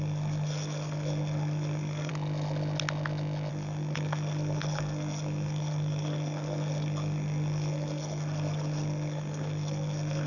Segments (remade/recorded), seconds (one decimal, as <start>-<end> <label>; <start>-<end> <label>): 0.0-2.1 remade; 2.1-3.5 recorded; 3.5-10.3 remade